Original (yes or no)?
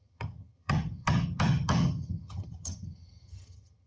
no